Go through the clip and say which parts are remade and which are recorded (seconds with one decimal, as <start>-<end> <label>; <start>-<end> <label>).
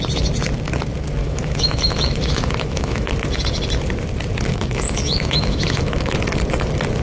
0.0-1.2 recorded; 1.2-3.1 remade; 3.1-4.5 recorded; 4.5-6.2 remade; 6.2-7.0 recorded